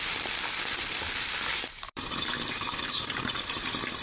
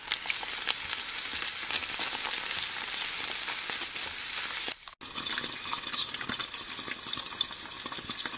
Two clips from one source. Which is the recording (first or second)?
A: second